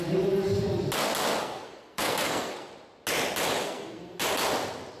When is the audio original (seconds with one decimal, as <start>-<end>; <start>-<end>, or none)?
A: 0.0-1.4; 2.7-3.6; 4.2-5.0